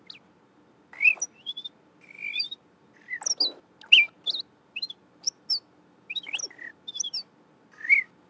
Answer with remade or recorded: recorded